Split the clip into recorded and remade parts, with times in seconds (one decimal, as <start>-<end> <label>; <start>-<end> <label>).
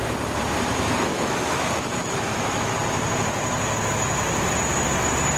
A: 0.0-1.1 recorded; 1.1-2.7 remade; 2.7-5.4 recorded